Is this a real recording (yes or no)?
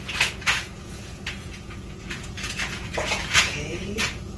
no